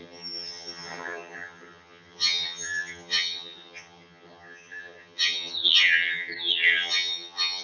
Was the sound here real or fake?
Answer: fake